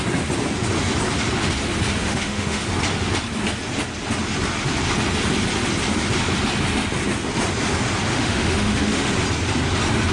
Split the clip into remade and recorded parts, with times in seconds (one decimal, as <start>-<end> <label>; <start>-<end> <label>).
0.0-2.0 recorded; 2.0-2.6 remade; 2.6-8.1 recorded; 8.1-9.1 remade; 9.1-10.1 recorded